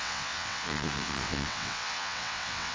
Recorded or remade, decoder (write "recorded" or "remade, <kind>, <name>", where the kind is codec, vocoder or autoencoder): remade, vocoder, WaveNeXt